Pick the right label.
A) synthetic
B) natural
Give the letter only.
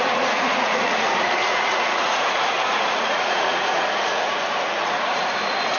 A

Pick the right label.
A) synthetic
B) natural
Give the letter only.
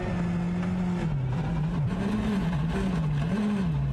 B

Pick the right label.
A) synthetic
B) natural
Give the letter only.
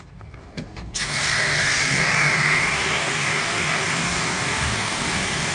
A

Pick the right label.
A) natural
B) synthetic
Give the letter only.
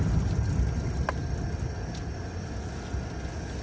A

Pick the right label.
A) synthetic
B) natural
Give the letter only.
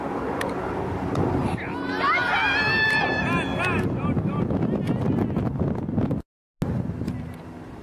B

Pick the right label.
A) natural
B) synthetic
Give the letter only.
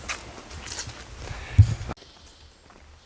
A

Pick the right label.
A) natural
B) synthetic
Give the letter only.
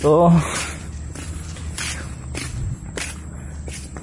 A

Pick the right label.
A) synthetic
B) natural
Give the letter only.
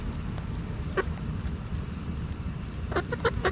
B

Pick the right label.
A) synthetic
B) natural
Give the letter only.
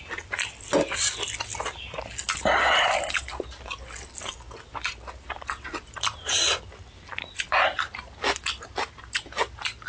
B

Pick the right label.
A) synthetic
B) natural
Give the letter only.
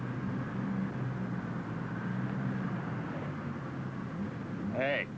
B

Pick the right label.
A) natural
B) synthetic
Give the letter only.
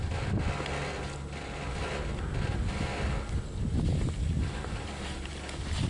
A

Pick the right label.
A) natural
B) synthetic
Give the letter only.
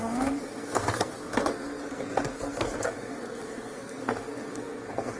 B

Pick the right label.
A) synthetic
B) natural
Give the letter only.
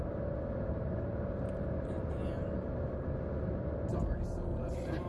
B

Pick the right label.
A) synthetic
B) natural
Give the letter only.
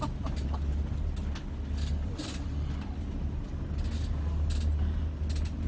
B